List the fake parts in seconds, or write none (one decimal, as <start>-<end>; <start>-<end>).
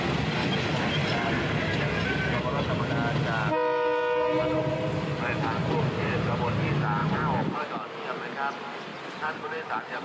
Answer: 1.0-1.6; 5.6-6.5; 7.0-7.7; 8.9-10.0